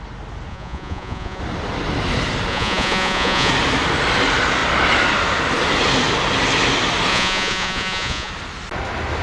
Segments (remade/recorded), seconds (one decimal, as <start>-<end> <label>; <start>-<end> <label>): 0.0-0.5 recorded; 0.5-1.4 remade; 1.4-2.5 recorded; 2.5-3.5 remade; 3.5-7.1 recorded; 7.1-8.3 remade; 8.3-9.2 recorded